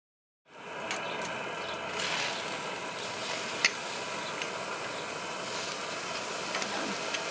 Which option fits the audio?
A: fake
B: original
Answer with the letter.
B